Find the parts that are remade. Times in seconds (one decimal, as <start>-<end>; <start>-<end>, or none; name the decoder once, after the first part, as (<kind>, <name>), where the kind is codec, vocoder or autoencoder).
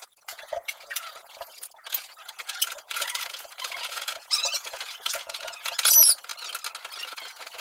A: 0.0-6.3 (vocoder, Vocos); 7.0-7.6